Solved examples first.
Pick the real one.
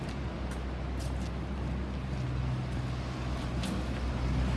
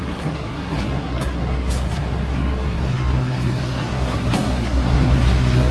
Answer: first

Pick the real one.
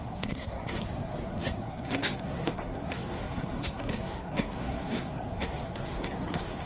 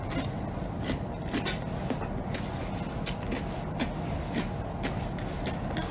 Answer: second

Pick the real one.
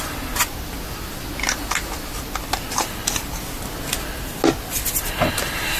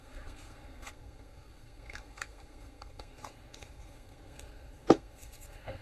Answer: first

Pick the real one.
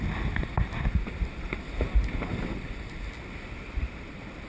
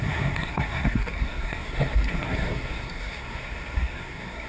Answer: first